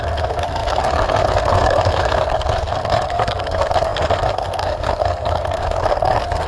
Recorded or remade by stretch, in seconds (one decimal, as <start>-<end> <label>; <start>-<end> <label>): 0.0-6.5 remade